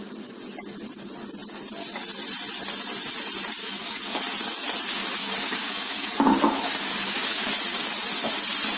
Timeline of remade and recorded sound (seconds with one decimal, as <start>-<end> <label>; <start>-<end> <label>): 0.0-3.6 recorded; 3.6-4.2 remade; 4.2-5.2 recorded; 5.2-7.5 remade; 7.5-8.8 recorded